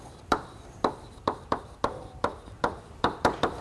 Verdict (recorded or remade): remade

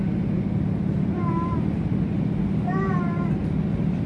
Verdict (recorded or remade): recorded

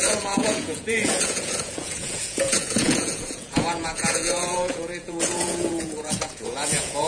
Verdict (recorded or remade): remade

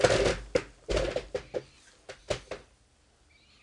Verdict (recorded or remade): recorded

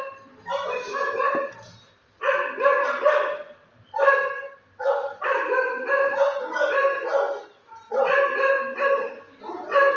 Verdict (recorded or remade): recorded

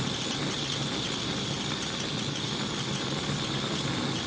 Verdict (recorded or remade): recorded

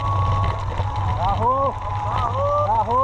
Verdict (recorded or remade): recorded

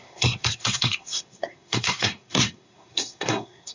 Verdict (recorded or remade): remade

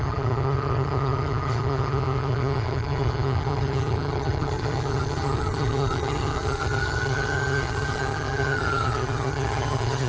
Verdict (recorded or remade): remade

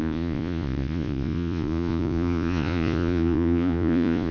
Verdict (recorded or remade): remade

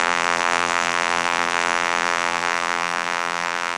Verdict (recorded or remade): remade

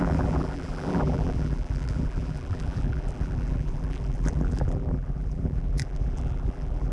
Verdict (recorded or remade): remade